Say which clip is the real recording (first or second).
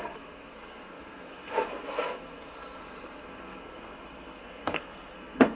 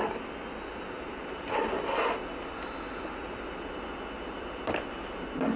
second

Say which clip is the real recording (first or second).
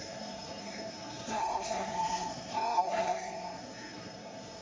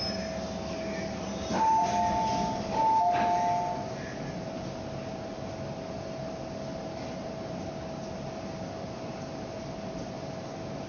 second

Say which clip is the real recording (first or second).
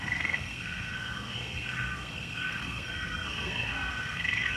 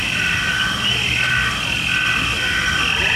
second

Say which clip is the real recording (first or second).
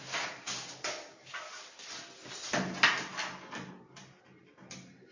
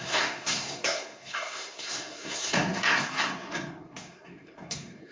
first